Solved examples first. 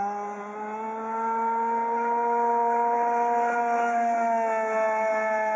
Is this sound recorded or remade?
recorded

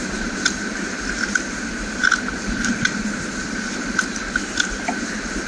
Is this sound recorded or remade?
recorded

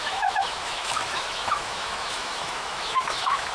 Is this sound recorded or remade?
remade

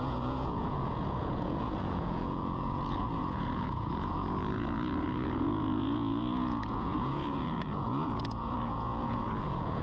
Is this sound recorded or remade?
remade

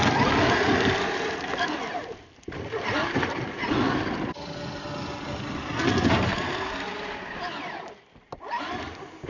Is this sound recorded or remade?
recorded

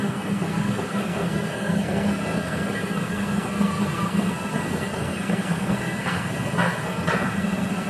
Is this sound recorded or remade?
remade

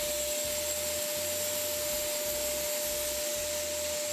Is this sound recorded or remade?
recorded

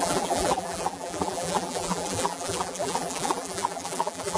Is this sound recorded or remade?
remade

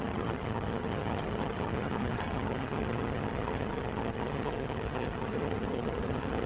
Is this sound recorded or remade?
remade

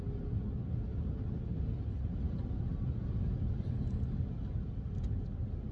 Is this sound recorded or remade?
recorded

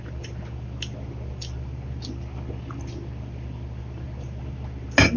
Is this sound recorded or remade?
recorded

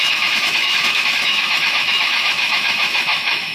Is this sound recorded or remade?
remade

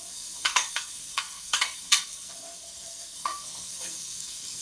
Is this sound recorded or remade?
remade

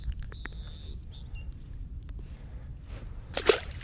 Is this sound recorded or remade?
recorded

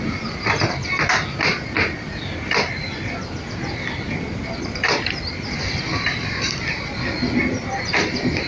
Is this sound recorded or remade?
recorded